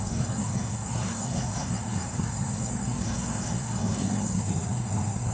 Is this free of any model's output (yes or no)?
no